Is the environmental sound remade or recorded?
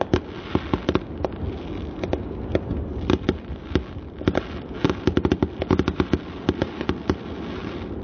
recorded